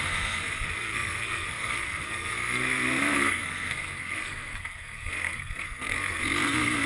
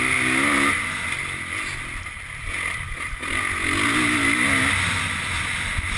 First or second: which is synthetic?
first